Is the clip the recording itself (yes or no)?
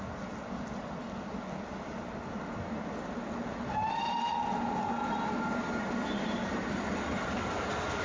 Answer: yes